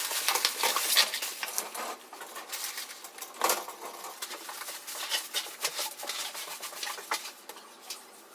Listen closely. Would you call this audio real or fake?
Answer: real